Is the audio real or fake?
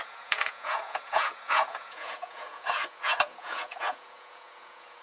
fake